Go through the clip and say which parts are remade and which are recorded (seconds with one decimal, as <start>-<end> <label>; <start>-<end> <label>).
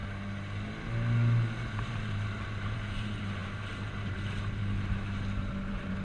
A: 0.0-1.9 recorded; 1.9-6.0 remade